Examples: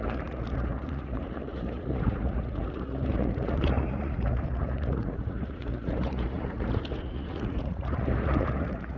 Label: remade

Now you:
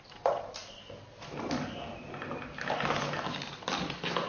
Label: recorded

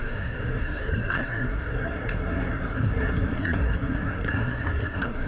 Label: remade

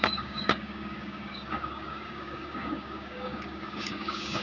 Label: remade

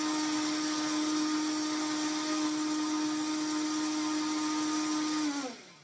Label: recorded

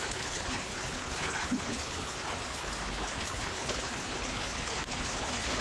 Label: remade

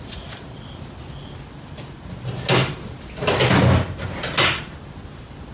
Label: recorded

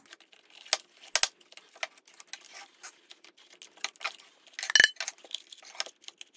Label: recorded